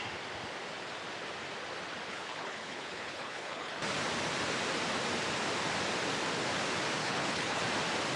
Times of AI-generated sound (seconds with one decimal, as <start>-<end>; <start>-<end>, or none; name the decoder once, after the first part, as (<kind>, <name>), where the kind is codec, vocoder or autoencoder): 2.1-3.7 (codec, HILCodec); 7.0-7.6